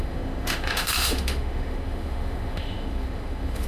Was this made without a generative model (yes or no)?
no